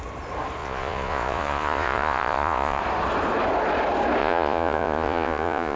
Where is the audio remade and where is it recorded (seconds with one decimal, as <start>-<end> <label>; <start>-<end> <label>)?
0.0-0.6 recorded; 0.6-2.8 remade; 2.8-4.2 recorded; 4.2-5.8 remade